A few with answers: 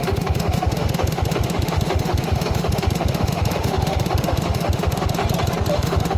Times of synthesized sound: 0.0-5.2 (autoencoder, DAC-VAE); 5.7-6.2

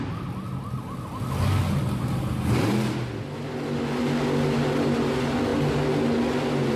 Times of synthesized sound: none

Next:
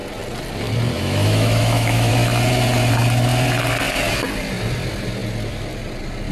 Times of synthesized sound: 1.0-2.1 (autoencoder, DAC-VAE)

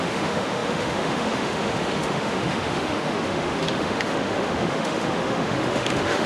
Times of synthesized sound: 0.0-6.3 (autoencoder, DAC-VAE)

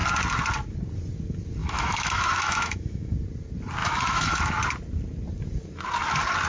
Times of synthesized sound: 1.6-3.1 (autoencoder, DAC-VAE); 3.8-4.4

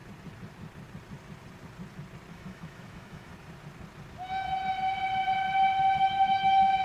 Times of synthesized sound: 2.3-3.3 (autoencoder, DAC-VAE); 6.0-6.8

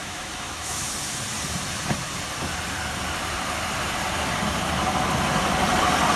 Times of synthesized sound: 0.0-0.9 (autoencoder, DAC-VAE)